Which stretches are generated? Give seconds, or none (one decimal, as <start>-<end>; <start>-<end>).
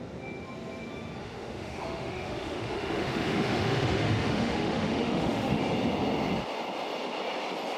1.2-5.6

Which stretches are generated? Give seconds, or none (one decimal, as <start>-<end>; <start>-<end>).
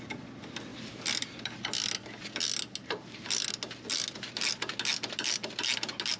none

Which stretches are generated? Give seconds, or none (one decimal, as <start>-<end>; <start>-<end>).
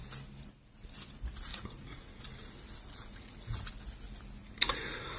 1.5-2.2; 3.1-3.7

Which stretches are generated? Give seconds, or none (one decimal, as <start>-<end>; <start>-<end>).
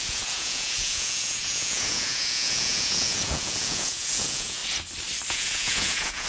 0.0-4.6; 5.3-6.3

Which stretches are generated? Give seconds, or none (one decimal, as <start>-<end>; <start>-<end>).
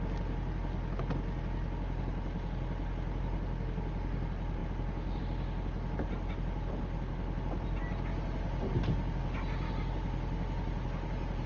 none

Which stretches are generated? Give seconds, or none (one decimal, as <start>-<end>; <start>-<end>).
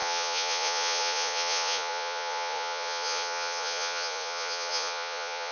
0.0-5.5